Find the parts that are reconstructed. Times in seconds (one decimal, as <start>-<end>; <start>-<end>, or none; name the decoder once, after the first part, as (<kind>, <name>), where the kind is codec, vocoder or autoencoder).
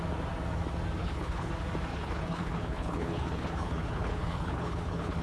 1.0-1.5 (codec, HILCodec); 1.9-5.2